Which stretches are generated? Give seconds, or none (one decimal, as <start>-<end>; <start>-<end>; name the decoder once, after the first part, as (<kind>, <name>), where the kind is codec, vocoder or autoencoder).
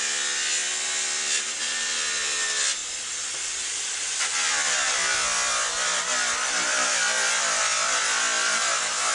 none